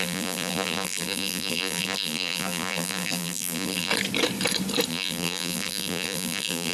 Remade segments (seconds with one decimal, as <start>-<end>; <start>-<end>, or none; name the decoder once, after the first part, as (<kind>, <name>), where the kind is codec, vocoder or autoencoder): 0.0-3.9 (vocoder, BigVGAN v2); 4.9-6.7